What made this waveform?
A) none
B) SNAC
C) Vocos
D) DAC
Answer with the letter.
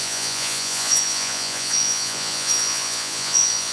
C